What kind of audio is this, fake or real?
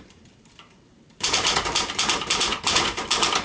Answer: fake